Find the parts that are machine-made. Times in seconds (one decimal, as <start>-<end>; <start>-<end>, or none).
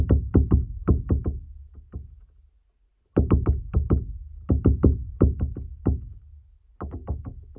none